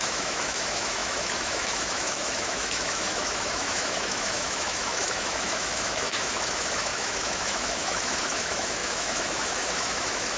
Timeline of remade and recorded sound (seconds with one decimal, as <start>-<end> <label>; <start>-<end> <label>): 0.0-10.4 remade